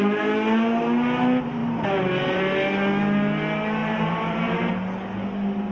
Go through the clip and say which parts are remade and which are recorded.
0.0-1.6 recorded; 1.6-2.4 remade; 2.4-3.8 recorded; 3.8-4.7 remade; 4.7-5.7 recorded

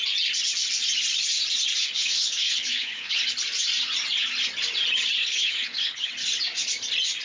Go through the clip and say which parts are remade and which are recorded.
0.0-1.8 recorded; 1.8-3.2 remade; 3.2-5.2 recorded; 5.2-6.1 remade; 6.1-7.2 recorded

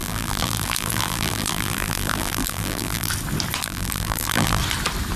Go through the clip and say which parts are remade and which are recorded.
0.0-3.1 remade; 3.1-3.6 recorded; 3.6-4.6 remade; 4.6-5.2 recorded

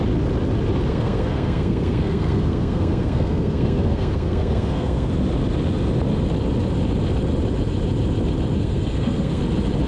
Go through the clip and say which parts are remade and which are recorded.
0.0-0.9 recorded; 0.9-5.1 remade; 5.1-8.6 recorded; 8.6-9.4 remade; 9.4-9.9 recorded

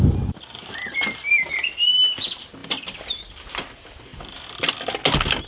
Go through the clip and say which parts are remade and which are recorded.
0.0-2.6 recorded; 2.6-3.4 remade; 3.4-4.1 recorded; 4.1-4.9 remade; 4.9-5.5 recorded

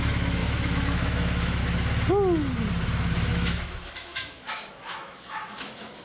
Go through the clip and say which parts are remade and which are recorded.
0.0-1.6 remade; 1.6-3.3 recorded; 3.3-6.0 remade

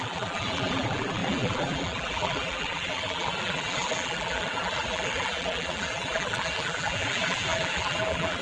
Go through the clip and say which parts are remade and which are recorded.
0.0-8.4 remade